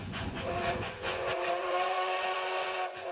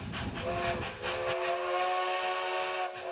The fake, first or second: first